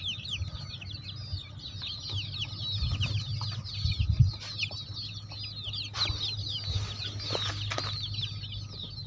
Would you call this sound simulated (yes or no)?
no